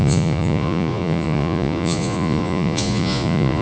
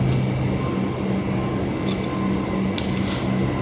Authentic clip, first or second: second